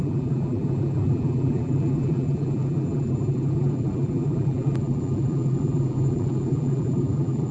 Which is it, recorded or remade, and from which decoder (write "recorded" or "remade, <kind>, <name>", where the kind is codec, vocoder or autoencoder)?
remade, vocoder, BigVGAN v2